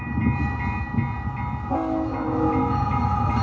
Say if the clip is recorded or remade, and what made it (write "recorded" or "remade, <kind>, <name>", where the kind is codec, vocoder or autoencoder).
recorded